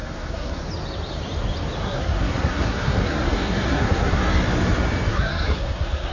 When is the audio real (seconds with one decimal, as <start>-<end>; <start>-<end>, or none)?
0.6-1.8; 4.2-5.1